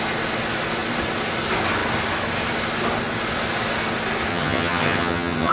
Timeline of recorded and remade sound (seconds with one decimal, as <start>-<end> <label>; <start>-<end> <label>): 0.0-4.3 recorded; 4.3-5.5 remade

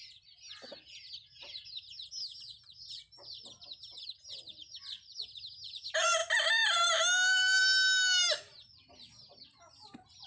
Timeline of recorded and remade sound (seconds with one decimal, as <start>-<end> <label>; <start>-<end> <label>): 0.0-10.3 recorded